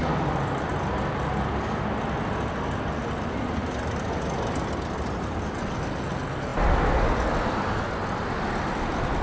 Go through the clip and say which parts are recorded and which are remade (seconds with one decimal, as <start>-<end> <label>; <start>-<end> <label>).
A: 0.0-9.2 recorded